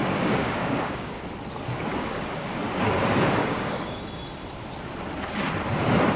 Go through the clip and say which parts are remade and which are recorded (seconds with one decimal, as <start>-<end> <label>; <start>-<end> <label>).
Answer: 0.0-1.2 remade; 1.2-1.9 recorded; 1.9-2.6 remade; 2.6-3.4 recorded; 3.4-4.0 remade; 4.0-6.2 recorded